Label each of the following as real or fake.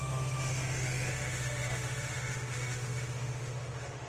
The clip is fake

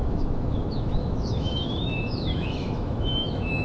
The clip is fake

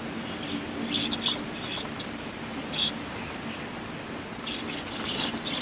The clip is real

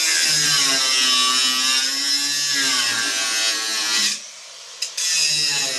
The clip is real